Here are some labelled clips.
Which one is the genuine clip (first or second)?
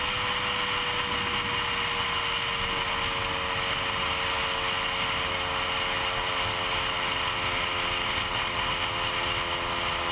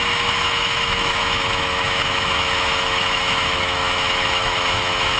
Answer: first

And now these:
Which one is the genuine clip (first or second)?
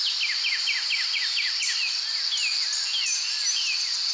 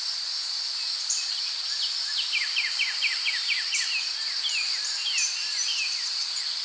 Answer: first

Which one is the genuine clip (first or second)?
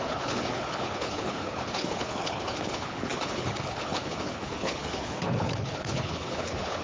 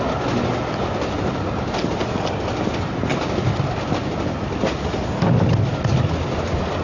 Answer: second